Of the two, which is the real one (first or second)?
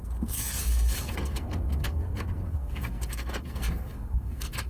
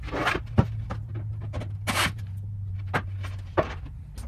second